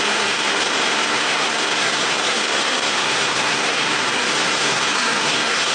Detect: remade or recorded remade